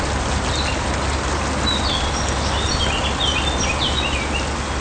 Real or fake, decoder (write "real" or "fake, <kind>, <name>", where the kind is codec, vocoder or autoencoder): real